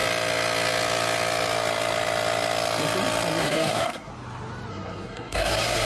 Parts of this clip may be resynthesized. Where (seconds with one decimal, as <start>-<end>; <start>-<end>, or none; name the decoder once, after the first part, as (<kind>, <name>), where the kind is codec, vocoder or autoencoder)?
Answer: 3.4-4.1 (codec, SNAC); 4.7-5.9